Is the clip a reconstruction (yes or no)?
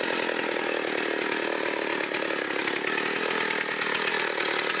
no